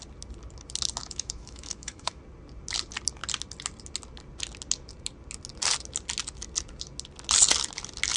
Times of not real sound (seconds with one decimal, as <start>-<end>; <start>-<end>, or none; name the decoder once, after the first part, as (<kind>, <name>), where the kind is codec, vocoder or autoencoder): 1.0-2.2 (autoencoder, DAC-VAE)